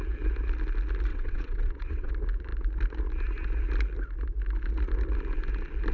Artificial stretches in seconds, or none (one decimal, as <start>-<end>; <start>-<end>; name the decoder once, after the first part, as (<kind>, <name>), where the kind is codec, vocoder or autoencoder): 1.1-2.1 (vocoder, WaveNeXt)